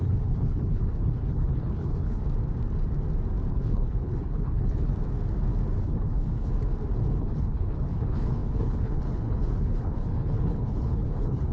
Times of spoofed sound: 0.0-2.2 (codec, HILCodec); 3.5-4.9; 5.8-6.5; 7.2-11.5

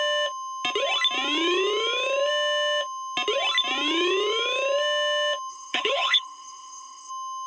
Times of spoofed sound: 5.5-7.1 (codec, HILCodec)

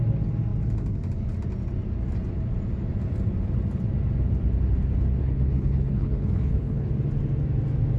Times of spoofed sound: 5.2-6.9 (codec, HILCodec)